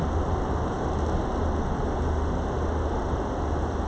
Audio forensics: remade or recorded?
recorded